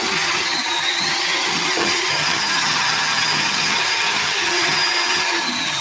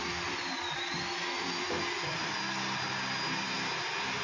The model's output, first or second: first